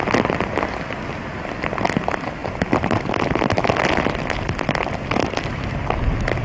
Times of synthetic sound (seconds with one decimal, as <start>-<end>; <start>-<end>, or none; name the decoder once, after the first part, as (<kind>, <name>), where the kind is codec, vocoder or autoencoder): none